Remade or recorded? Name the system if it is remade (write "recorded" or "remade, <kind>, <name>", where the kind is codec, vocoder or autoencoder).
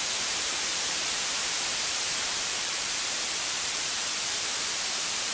remade, vocoder, BigVGAN v2